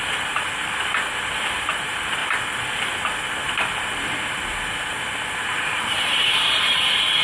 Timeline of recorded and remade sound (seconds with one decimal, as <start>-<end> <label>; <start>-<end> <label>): 0.0-2.2 remade; 2.2-3.8 recorded; 3.8-7.2 remade